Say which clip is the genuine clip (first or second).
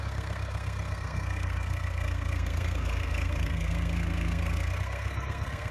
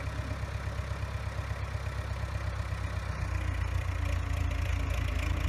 second